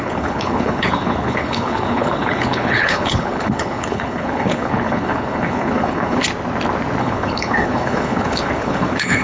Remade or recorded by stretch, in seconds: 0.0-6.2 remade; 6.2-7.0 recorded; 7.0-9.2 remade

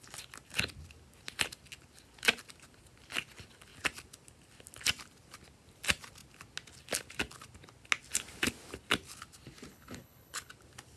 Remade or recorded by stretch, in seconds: 0.0-9.7 recorded; 9.7-10.5 remade; 10.5-11.0 recorded

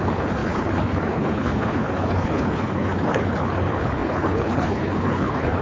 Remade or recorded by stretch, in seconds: 0.0-5.6 remade

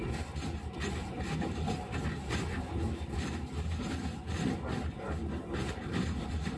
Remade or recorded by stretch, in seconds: 0.0-6.6 recorded

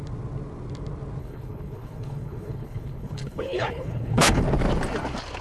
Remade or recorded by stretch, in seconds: 0.0-1.2 recorded; 1.2-4.4 remade; 4.4-5.4 recorded

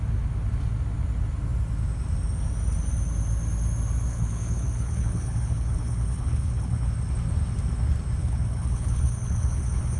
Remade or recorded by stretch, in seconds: 0.0-4.1 recorded; 4.1-6.9 remade; 6.9-8.2 recorded; 8.2-10.0 remade